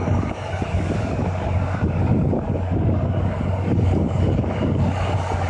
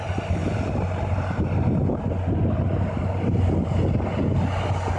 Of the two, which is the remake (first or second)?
first